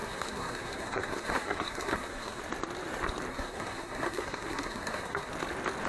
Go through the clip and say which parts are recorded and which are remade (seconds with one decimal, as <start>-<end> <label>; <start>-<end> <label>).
0.0-2.4 remade; 2.4-3.3 recorded; 3.3-5.3 remade; 5.3-5.9 recorded